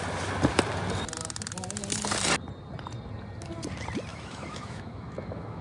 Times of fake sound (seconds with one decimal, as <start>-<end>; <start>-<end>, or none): 4.1-5.6